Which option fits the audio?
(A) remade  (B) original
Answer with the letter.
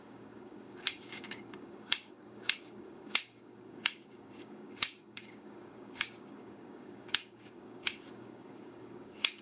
A